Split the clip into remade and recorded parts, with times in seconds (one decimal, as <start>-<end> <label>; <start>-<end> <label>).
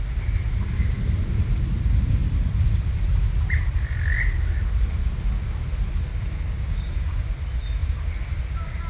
0.0-6.1 recorded; 6.1-7.1 remade; 7.1-8.9 recorded